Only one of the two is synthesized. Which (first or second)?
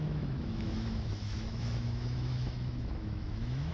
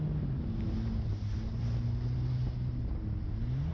first